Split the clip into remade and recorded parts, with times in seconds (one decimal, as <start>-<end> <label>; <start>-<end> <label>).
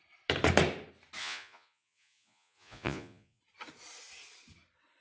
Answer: 0.0-1.2 recorded; 1.2-3.4 remade; 3.4-5.0 recorded